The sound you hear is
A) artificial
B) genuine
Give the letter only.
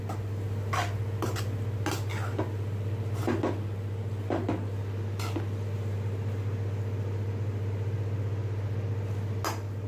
B